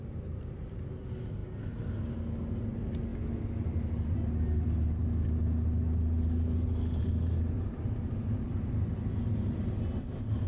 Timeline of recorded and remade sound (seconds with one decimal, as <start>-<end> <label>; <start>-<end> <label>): 0.0-10.5 recorded